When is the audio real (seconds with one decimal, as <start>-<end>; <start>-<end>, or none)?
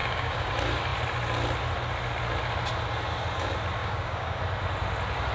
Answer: 0.5-3.8; 4.4-5.3